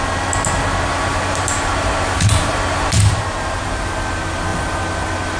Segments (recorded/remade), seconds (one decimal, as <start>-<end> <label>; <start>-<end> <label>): 0.0-0.9 recorded; 0.9-3.9 remade; 3.9-5.4 recorded